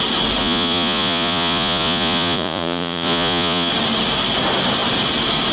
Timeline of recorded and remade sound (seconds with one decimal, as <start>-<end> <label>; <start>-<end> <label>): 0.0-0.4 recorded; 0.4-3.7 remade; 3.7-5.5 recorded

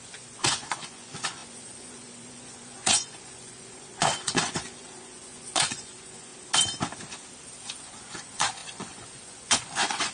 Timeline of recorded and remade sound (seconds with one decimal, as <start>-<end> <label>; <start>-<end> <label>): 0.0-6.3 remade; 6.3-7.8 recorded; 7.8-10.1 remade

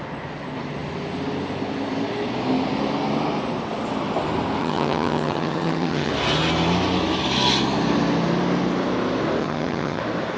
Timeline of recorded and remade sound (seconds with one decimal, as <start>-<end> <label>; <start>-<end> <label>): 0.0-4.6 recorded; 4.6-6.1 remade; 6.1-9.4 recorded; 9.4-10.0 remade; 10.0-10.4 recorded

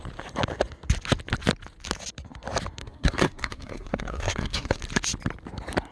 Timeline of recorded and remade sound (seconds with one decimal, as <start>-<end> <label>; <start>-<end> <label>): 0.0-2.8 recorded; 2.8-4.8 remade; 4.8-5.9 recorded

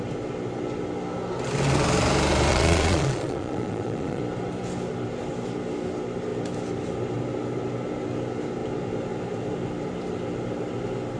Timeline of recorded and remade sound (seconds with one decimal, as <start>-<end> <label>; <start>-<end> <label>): 0.0-2.5 recorded; 2.5-4.2 remade; 4.2-11.2 recorded

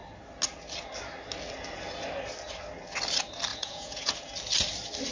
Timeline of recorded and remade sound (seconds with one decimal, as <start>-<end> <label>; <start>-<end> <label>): 0.0-3.5 recorded; 3.5-4.1 remade; 4.1-5.1 recorded